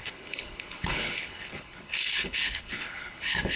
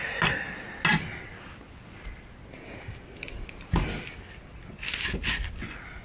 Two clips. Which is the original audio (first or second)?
second